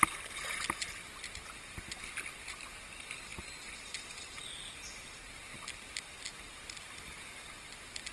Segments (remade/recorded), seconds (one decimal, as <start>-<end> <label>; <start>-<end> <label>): 0.0-8.1 recorded

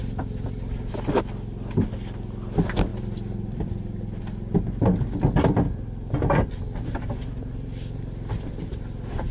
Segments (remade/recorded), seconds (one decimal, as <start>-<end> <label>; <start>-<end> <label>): 0.0-2.9 recorded; 2.9-4.2 remade; 4.2-7.1 recorded; 7.1-8.0 remade; 8.0-9.3 recorded

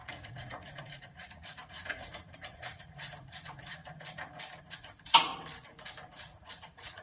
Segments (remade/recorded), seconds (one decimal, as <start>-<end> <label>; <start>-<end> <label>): 0.0-3.8 remade; 3.8-4.6 recorded; 4.6-5.3 remade; 5.3-6.2 recorded; 6.2-7.0 remade

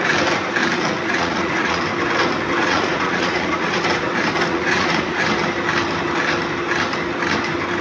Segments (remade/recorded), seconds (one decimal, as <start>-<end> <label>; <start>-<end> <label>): 0.0-0.6 recorded; 0.6-1.8 remade; 1.8-2.6 recorded; 2.6-3.8 remade; 3.8-4.5 recorded; 4.5-5.2 remade; 5.2-7.8 recorded

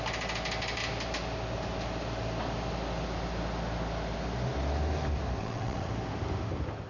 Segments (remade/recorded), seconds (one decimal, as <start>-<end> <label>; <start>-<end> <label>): 0.0-5.4 recorded; 5.4-5.9 remade; 5.9-6.9 recorded